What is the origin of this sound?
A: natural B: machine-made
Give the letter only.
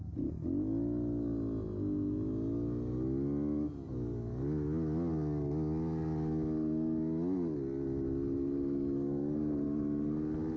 A